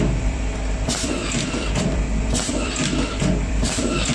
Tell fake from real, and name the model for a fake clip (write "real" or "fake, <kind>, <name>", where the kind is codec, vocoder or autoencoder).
fake, vocoder, BigVGAN v2